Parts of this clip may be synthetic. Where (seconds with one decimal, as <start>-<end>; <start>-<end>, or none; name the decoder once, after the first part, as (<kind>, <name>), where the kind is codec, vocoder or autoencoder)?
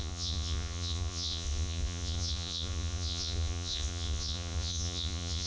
0.0-5.5 (vocoder, Vocos)